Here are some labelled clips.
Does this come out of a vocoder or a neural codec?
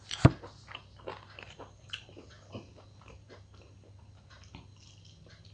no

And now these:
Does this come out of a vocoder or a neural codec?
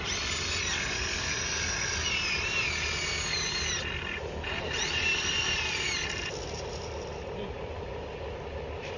no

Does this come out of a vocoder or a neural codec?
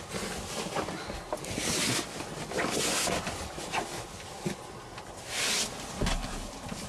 no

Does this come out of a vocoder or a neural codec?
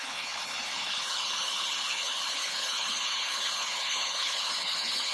yes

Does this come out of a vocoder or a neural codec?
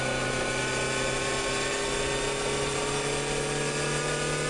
no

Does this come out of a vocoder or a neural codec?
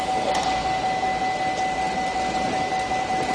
no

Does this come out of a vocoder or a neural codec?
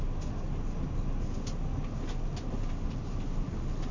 no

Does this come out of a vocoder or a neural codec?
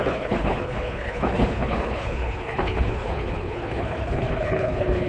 yes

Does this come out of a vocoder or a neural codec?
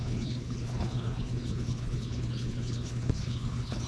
yes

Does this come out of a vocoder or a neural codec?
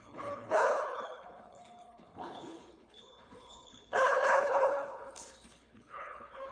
yes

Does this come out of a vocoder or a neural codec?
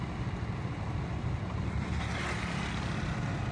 no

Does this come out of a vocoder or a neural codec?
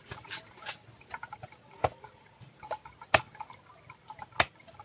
no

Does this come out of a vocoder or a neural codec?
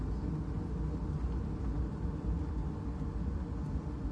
no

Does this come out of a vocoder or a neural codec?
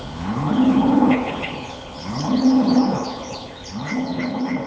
yes